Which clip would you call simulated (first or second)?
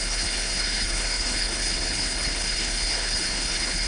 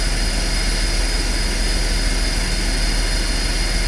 first